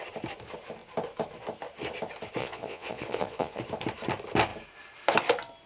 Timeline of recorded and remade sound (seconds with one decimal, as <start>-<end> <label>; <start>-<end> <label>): 0.0-2.4 recorded; 2.4-3.6 remade; 3.6-5.7 recorded